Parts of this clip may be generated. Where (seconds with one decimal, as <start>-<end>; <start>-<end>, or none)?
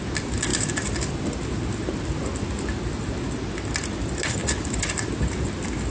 none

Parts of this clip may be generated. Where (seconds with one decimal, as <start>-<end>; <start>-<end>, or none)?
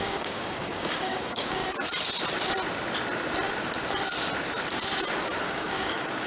0.0-1.6; 5.4-6.3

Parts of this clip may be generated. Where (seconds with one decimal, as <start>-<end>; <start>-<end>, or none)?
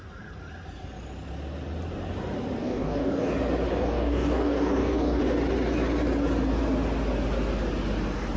2.6-3.3; 3.7-5.2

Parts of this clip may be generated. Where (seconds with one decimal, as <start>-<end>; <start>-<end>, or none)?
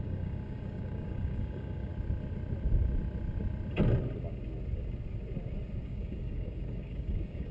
0.0-1.9; 5.8-7.5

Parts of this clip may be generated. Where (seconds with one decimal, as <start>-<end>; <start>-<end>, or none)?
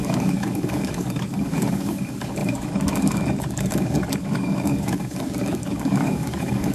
0.0-6.7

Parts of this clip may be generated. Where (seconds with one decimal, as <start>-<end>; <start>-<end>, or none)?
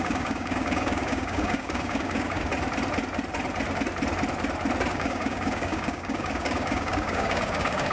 0.0-2.5; 4.9-7.9